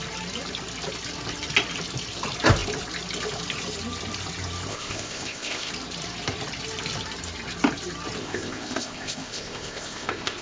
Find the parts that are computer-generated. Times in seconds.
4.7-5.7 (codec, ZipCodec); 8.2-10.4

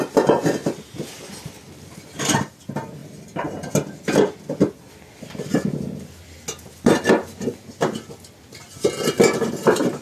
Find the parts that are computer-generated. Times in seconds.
none

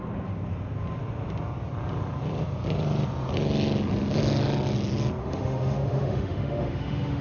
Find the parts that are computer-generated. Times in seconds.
5.2-7.2 (autoencoder, DAC-VAE)

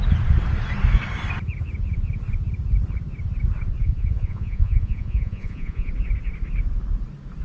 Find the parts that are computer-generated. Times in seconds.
3.8-5.9 (vocoder, Vocos)

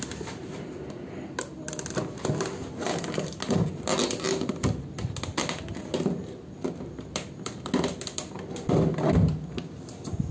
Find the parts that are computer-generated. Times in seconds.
none

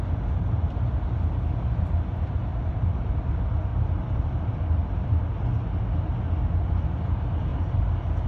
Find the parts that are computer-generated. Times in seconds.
2.5-3.3 (vocoder, BigVGAN v2); 3.7-5.5